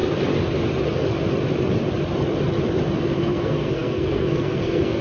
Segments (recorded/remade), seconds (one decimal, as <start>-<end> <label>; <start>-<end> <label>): 0.0-3.0 recorded; 3.0-5.0 remade